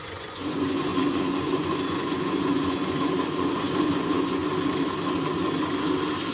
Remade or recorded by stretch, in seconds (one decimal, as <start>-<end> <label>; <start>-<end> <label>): 0.0-4.4 remade; 4.4-6.3 recorded